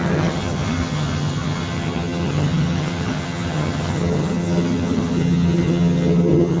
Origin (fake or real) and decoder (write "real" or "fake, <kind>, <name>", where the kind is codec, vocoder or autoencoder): fake, vocoder, HiFi-GAN